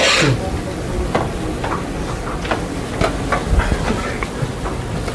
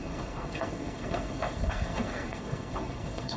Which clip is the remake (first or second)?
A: second